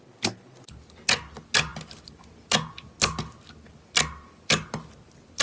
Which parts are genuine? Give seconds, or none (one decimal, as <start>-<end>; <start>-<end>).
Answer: 0.0-5.4